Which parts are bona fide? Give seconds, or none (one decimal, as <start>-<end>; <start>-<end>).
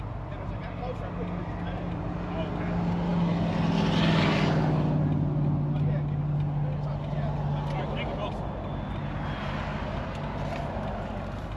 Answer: 0.0-11.6